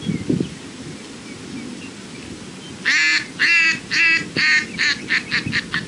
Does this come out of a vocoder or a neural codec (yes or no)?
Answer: no